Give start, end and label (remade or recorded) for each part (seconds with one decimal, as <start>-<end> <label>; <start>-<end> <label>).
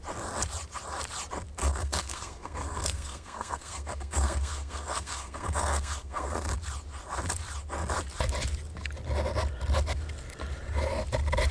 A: 0.0-1.6 recorded; 1.6-6.5 remade; 6.5-11.5 recorded